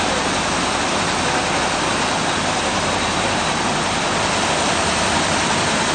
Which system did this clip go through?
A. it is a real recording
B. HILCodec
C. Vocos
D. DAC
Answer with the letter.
A